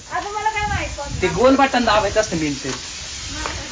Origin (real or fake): real